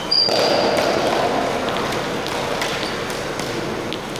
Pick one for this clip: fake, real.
real